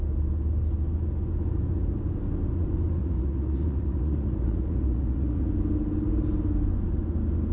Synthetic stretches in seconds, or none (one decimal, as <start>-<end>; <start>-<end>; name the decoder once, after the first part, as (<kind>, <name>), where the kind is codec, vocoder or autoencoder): 3.0-5.5 (vocoder, Vocos)